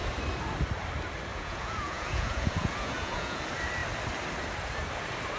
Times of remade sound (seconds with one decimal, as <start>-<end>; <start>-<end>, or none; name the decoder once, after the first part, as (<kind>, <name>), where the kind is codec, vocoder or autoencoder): 1.3-3.4 (vocoder, Vocos)